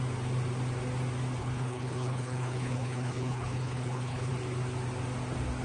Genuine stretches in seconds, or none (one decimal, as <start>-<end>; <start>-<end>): 0.0-1.4; 4.3-5.6